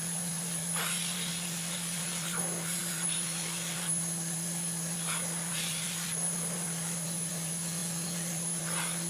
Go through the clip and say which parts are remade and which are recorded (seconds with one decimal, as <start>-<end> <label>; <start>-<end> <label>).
0.0-9.1 recorded